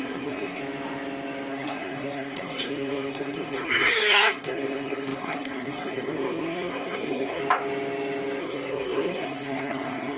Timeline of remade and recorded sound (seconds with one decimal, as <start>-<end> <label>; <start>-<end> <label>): 0.0-0.6 remade; 0.6-1.5 recorded; 1.5-7.4 remade; 7.4-8.4 recorded; 8.4-10.2 remade